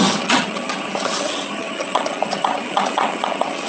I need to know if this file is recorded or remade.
remade